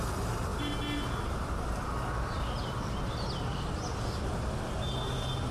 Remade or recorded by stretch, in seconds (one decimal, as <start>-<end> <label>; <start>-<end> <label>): 0.0-5.5 recorded